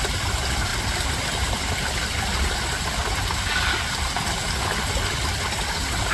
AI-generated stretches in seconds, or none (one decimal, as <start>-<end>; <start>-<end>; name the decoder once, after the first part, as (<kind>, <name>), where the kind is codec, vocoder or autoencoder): none